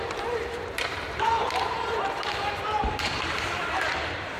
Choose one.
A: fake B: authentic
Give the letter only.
A